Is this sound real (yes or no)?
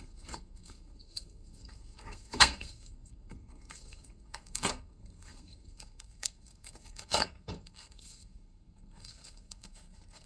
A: no